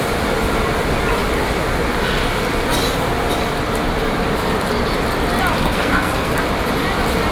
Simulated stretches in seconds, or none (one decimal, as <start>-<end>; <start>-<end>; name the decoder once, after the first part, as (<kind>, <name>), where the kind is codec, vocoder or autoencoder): 5.6-6.4 (codec, SNAC)